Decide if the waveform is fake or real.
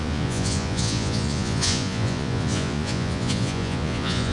fake